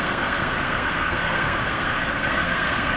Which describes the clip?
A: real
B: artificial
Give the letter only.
B